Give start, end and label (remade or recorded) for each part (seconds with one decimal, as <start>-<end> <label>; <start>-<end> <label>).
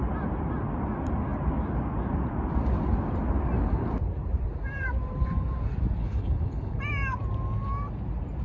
0.0-6.0 recorded; 6.0-6.8 remade; 6.8-8.4 recorded